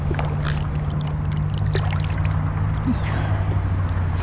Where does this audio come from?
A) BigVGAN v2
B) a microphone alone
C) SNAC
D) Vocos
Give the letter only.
B